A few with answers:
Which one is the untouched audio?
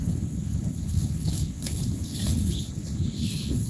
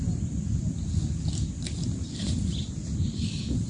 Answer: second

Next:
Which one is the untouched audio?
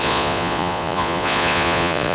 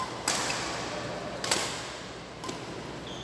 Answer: second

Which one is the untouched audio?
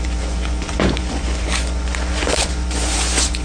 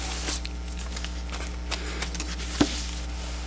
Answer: second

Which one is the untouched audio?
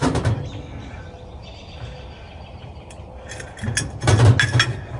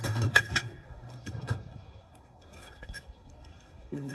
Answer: first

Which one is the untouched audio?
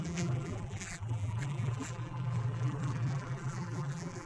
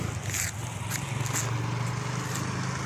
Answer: second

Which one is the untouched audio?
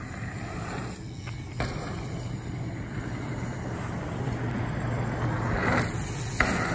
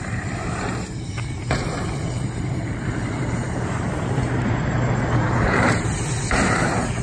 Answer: first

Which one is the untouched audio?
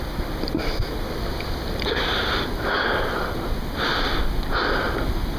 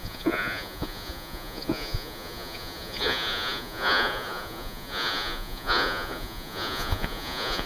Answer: first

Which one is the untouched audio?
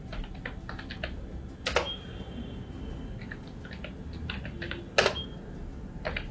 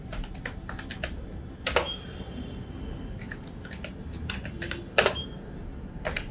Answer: first